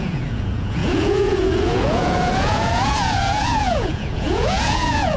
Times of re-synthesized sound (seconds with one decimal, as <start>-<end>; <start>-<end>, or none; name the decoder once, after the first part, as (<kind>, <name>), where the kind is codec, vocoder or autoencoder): 0.0-5.2 (vocoder, Vocos)